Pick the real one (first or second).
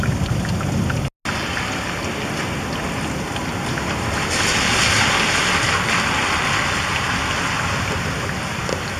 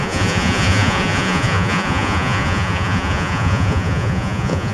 first